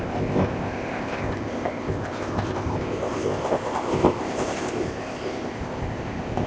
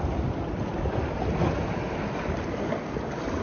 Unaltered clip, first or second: second